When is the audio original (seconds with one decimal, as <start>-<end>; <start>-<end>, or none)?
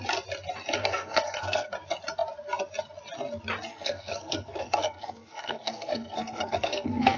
0.0-0.8; 1.7-3.7